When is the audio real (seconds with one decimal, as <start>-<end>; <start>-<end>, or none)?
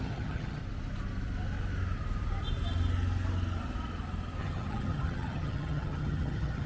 0.6-4.4